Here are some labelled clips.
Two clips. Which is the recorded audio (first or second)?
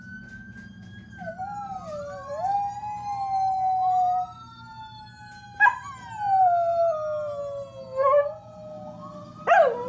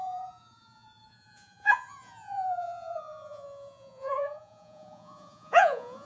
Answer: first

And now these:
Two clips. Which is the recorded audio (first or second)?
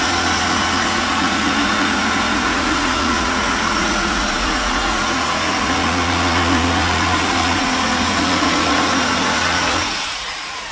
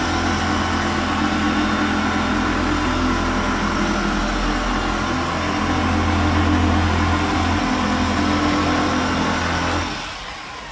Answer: second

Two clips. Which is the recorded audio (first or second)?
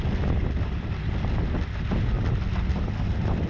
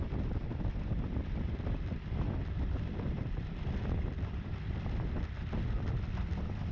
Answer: first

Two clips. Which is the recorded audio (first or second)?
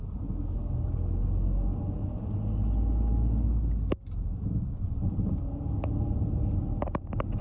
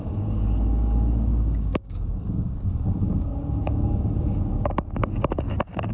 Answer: first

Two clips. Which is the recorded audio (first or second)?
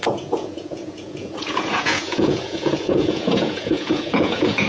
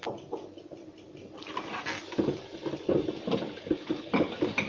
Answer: second